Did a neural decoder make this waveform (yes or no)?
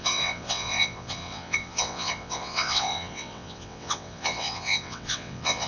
yes